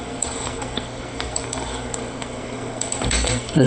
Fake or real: fake